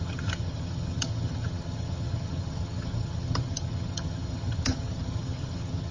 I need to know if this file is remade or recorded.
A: remade